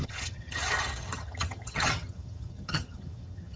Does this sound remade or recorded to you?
remade